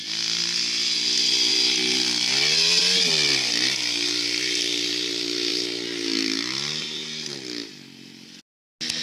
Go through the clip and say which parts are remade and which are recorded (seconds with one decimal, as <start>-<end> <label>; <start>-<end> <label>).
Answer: 0.0-9.0 recorded